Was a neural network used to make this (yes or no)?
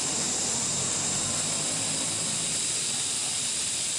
yes